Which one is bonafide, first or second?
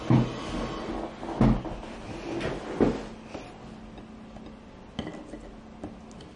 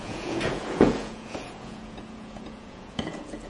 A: first